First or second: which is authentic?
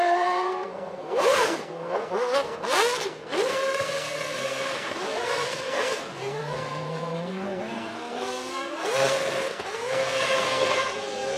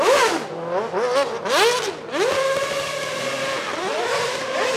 second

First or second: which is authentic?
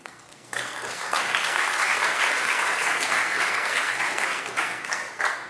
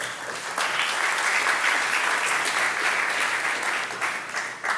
second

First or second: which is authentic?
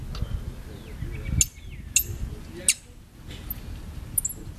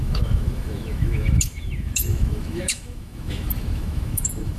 first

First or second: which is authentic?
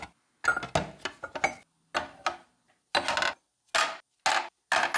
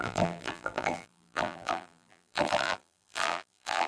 first